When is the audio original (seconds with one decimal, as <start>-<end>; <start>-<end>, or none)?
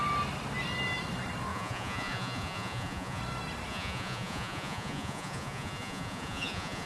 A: 0.0-1.5; 3.2-3.7